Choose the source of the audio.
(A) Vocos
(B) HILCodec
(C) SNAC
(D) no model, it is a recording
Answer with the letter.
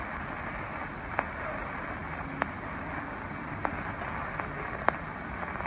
D